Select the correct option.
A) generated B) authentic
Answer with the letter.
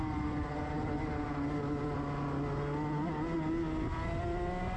B